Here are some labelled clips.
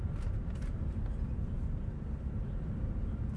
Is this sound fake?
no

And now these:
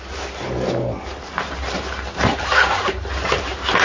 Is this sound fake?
no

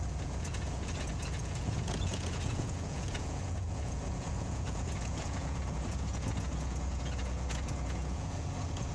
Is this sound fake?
yes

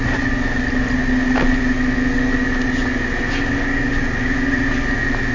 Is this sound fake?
no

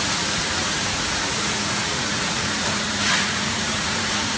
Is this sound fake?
yes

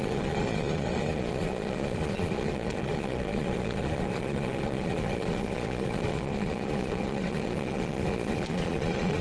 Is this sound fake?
yes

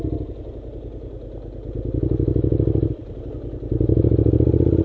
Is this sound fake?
no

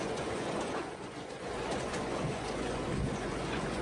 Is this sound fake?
yes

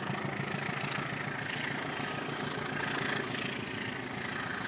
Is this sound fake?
no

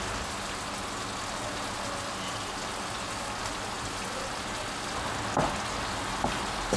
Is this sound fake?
no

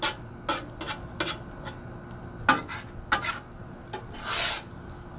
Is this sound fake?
no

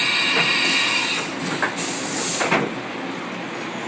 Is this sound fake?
no